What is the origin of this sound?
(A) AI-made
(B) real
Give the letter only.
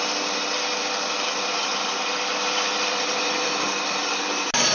B